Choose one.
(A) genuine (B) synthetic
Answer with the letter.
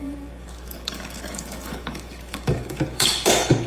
B